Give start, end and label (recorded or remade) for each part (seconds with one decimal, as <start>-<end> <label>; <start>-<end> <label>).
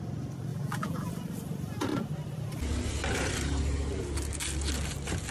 0.0-0.5 recorded; 0.5-1.1 remade; 1.1-5.3 recorded